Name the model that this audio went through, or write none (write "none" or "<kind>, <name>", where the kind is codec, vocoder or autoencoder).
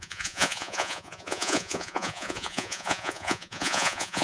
vocoder, Vocos